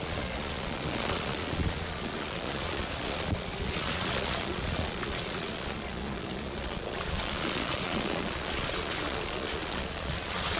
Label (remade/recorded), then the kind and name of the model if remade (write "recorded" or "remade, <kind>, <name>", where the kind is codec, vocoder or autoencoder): remade, vocoder, Vocos